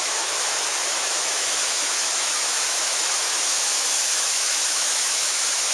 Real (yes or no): no